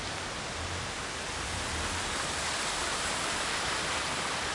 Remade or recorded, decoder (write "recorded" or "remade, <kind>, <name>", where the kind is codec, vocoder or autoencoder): recorded